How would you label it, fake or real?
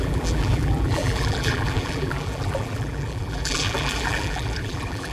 fake